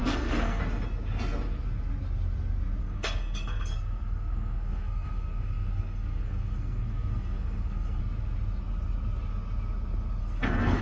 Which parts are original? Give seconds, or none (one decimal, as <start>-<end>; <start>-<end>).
0.6-2.8; 8.0-10.2